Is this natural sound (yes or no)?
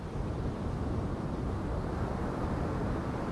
no